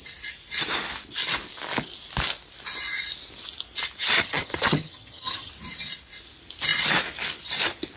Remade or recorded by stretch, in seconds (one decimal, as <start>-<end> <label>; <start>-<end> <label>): 0.0-4.2 recorded; 4.2-5.5 remade; 5.5-8.0 recorded